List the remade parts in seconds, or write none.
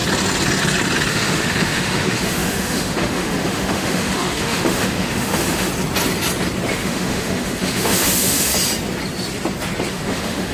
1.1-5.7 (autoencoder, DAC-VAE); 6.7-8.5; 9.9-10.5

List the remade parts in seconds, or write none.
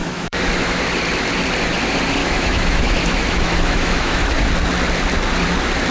0.0-0.8 (autoencoder, DAC-VAE); 2.2-4.5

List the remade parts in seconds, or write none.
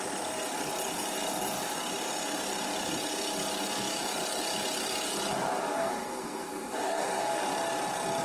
5.8-7.4 (codec, SNAC)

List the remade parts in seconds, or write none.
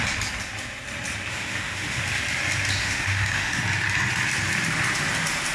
1.3-2.0 (autoencoder, DAC-VAE); 2.8-3.6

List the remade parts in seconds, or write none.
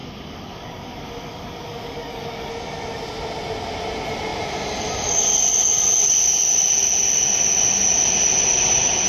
0.0-2.5 (codec, DAC)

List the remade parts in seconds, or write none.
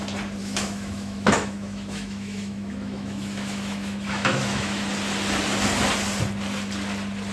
0.4-4.8 (autoencoder, DAC-VAE)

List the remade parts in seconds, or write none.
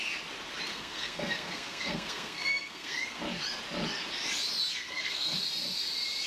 0.7-3.2 (codec, SNAC); 4.7-5.4